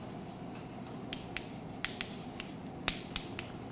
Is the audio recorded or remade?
recorded